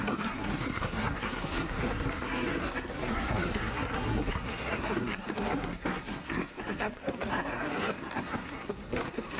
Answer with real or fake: fake